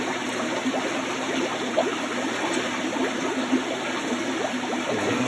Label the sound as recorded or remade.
recorded